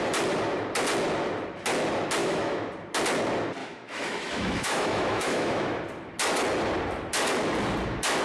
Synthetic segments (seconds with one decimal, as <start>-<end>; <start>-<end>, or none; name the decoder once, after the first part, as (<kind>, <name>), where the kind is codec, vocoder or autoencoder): 2.2-2.7 (autoencoder, DAC-VAE); 3.6-5.8